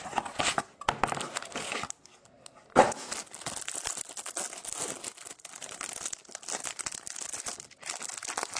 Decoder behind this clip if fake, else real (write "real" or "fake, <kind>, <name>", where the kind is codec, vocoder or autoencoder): real